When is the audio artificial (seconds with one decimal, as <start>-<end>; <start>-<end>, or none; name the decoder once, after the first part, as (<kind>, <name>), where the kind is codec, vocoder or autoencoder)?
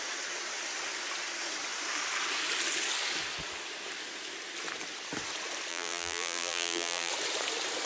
5.7-7.1 (vocoder, BigVGAN v2)